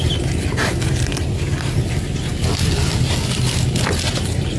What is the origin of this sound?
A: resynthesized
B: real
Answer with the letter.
B